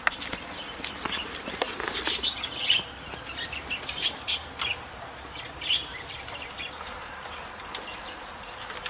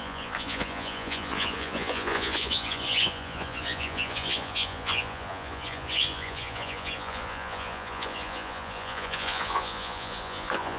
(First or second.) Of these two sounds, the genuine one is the first